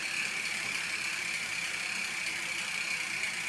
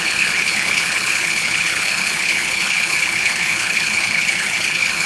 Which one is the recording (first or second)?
first